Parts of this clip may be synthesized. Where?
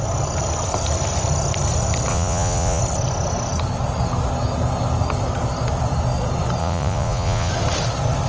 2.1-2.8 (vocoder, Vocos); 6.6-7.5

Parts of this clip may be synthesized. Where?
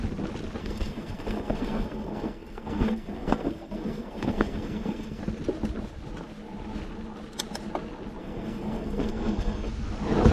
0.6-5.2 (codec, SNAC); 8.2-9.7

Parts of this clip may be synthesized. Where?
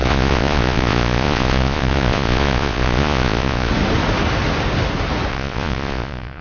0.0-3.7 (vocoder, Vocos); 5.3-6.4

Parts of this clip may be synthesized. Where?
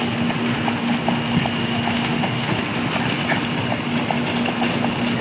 1.6-2.6 (autoencoder, DAC-VAE)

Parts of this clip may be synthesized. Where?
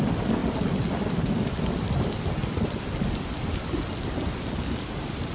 none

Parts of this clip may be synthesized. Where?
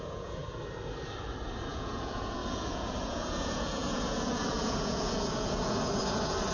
0.0-0.4 (vocoder, Vocos); 1.7-6.5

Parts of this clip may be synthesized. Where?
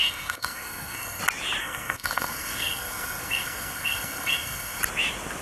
0.0-1.2 (codec, SNAC); 1.6-4.8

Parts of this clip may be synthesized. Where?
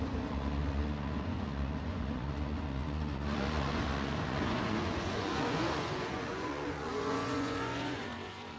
0.0-8.6 (vocoder, Vocos)